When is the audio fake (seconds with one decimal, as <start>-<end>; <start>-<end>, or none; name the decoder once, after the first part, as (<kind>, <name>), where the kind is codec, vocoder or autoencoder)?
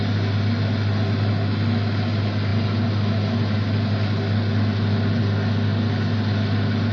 none